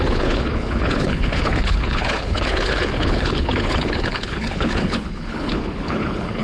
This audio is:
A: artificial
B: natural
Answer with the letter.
A